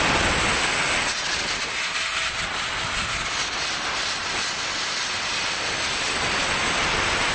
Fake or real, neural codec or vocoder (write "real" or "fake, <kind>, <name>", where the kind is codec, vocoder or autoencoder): real